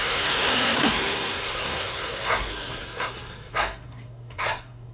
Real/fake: fake